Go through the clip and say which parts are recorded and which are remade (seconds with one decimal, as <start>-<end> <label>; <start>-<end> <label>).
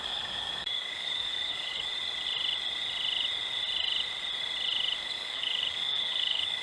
0.0-1.9 remade; 1.9-5.0 recorded; 5.0-6.6 remade